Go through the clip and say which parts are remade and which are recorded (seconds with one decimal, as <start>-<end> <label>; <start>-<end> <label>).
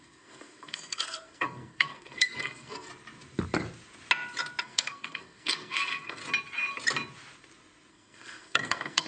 0.0-2.9 remade; 2.9-4.6 recorded; 4.6-6.2 remade; 6.2-7.9 recorded; 7.9-9.1 remade